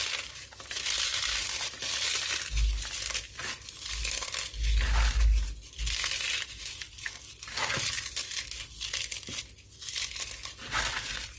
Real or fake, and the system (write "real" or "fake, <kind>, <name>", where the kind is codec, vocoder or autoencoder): real